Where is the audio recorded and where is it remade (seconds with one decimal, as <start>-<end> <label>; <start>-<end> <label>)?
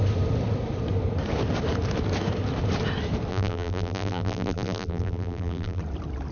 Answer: 0.0-3.3 recorded; 3.3-5.8 remade; 5.8-6.3 recorded